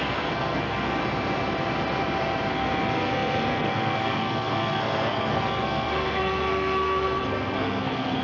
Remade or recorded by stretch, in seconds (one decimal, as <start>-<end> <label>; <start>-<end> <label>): 0.0-1.0 remade; 1.0-2.5 recorded; 2.5-8.2 remade